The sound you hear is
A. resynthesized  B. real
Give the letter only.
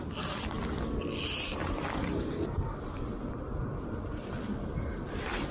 B